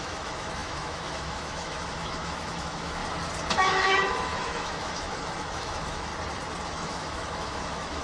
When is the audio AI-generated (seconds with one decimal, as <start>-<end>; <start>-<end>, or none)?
0.0-3.0; 3.5-6.1; 6.7-8.0